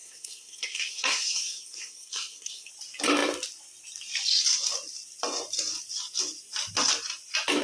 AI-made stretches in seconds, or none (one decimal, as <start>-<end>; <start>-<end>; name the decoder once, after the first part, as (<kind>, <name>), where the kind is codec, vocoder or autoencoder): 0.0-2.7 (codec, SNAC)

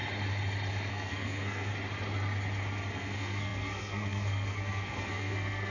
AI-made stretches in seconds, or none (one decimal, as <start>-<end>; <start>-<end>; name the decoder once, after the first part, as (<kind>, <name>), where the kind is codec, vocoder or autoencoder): 0.9-1.7 (codec, SNAC); 2.9-5.7

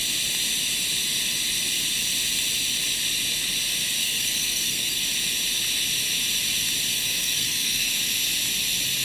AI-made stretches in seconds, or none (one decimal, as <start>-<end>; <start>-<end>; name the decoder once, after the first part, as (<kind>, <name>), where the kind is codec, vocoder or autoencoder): 4.0-5.0 (codec, SNAC); 6.9-7.9